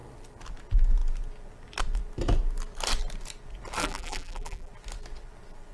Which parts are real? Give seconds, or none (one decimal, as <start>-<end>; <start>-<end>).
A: 0.0-3.8; 4.7-5.7